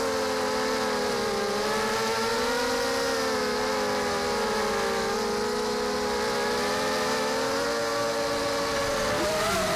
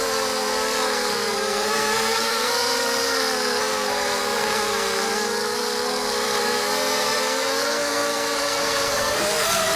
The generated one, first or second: second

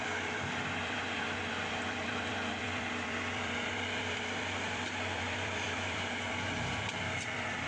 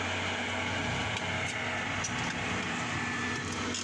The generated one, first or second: first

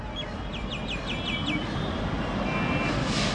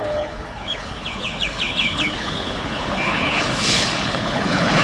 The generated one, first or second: second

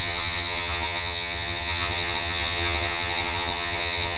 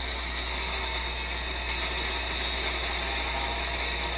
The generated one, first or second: first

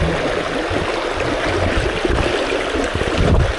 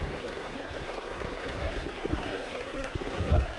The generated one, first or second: second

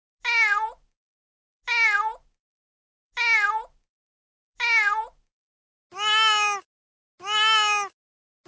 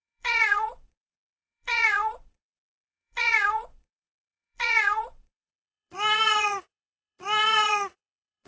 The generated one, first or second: second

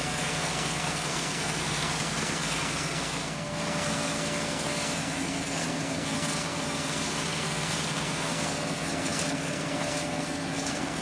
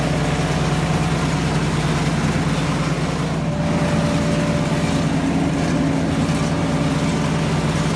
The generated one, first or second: first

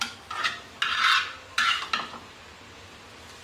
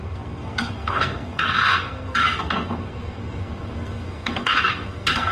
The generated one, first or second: second